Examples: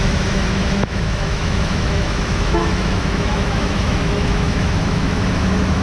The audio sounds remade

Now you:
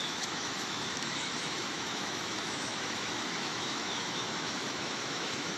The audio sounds remade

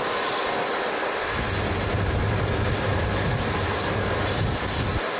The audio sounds remade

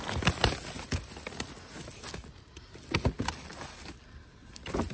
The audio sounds recorded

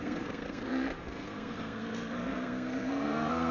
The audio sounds remade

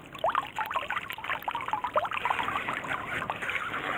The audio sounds recorded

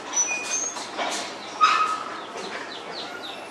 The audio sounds recorded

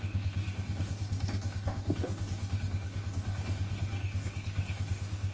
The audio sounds remade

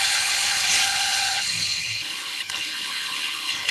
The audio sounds remade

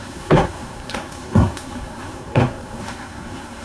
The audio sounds remade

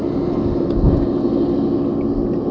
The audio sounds recorded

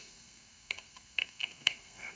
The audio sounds remade